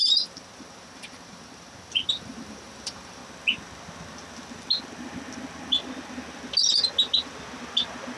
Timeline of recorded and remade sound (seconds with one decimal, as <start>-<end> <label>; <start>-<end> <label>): 0.0-3.2 remade; 3.2-8.2 recorded